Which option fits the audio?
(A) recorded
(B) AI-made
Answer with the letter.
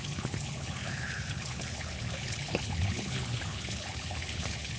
B